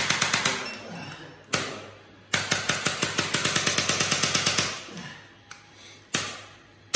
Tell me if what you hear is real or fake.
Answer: real